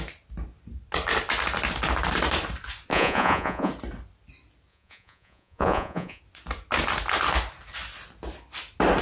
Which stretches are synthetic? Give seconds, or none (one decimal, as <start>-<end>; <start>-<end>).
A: 2.9-3.7; 4.7-6.2